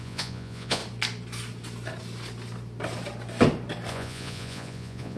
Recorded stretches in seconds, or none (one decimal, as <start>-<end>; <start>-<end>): 0.8-3.9